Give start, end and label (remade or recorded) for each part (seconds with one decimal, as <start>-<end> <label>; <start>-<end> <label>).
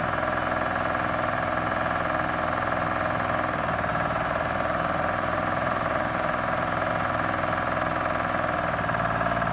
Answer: 0.0-3.9 recorded; 3.9-6.9 remade; 6.9-9.5 recorded